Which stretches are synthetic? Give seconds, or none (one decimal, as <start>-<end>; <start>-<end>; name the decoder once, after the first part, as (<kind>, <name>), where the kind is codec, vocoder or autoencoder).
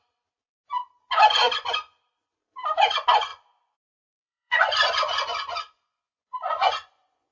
3.3-7.3 (vocoder, Vocos)